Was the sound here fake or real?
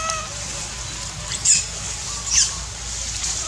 real